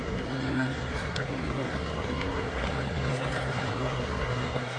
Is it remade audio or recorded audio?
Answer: remade